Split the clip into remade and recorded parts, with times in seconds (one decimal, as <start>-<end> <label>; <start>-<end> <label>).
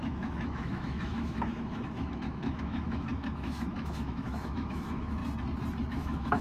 0.0-5.2 remade; 5.2-5.9 recorded; 5.9-6.4 remade